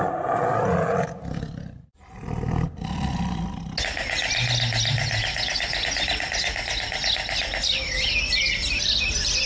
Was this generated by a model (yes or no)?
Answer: no